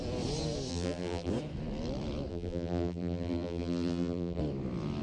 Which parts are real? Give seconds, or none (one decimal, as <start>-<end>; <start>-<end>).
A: 0.0-0.7; 1.3-2.3; 4.4-5.0

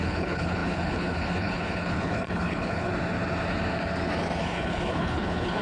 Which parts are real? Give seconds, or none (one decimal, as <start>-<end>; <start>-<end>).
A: 2.9-4.4

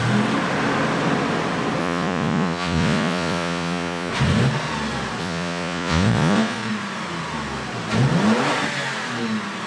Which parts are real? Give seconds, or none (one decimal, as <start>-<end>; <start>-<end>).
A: 0.0-1.8; 4.1-5.2; 6.7-9.7

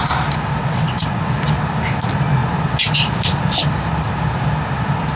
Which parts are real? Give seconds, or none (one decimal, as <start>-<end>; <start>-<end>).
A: 0.0-0.6; 1.3-5.2

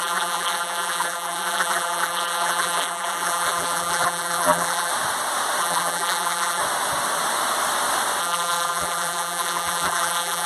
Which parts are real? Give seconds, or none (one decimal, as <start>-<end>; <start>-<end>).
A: 4.9-5.6; 6.6-8.2

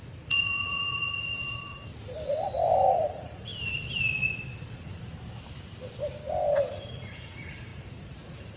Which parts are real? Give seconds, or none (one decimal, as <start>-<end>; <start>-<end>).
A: 1.9-2.9; 3.5-4.6; 5.1-6.7